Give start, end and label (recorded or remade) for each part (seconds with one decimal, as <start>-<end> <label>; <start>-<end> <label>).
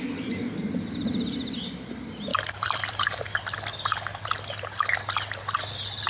0.0-2.3 recorded; 2.3-3.2 remade; 3.2-6.1 recorded